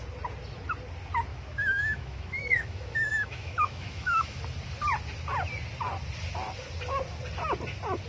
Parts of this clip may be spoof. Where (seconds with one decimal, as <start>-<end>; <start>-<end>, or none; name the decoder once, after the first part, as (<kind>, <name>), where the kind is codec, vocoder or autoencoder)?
1.3-4.4 (autoencoder, DAC-VAE)